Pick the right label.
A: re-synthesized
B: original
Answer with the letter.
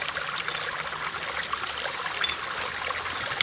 B